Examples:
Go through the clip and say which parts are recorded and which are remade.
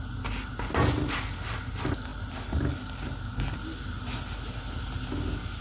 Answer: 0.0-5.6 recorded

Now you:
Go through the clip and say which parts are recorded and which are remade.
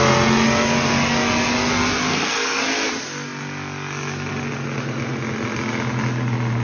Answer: 0.0-2.1 recorded; 2.1-2.6 remade; 2.6-6.6 recorded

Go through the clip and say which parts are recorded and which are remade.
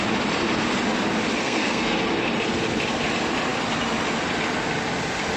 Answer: 0.0-1.4 recorded; 1.4-2.0 remade; 2.0-5.4 recorded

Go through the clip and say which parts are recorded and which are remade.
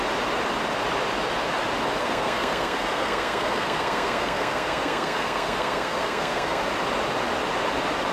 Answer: 0.0-2.0 recorded; 2.0-6.6 remade; 6.6-8.1 recorded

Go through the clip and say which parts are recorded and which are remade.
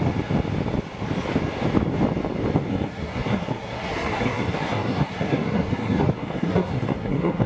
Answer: 0.0-2.7 recorded; 2.7-7.5 remade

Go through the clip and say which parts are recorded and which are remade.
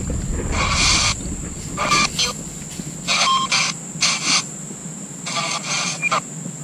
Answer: 0.0-6.6 recorded